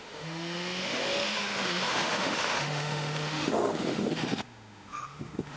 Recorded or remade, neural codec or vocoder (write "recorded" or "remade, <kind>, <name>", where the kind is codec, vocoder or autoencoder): remade, autoencoder, DAC-VAE